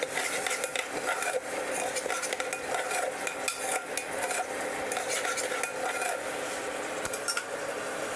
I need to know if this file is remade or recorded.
recorded